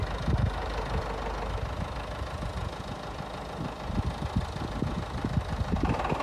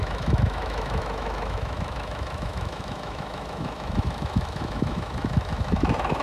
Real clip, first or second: first